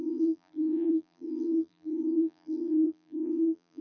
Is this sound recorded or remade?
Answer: remade